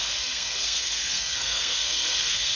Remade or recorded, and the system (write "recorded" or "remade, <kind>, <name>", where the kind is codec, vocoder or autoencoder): remade, codec, SNAC